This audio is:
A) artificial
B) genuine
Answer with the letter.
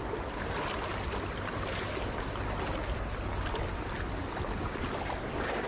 B